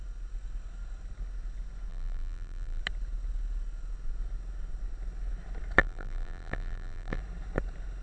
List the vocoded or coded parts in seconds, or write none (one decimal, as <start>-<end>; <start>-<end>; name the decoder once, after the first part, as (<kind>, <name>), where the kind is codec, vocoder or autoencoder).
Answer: 1.9-2.8 (vocoder, BigVGAN v2); 5.8-7.2